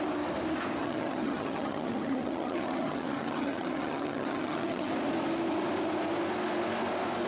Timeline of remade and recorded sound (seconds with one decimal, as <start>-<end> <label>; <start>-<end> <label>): 0.0-0.8 recorded; 0.8-4.9 remade; 4.9-7.3 recorded